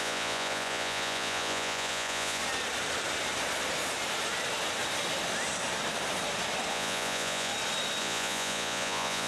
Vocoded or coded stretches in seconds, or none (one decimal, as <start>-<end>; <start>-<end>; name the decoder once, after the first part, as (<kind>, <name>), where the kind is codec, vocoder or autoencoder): 0.0-2.4 (vocoder, Vocos); 6.7-7.5; 8.0-9.3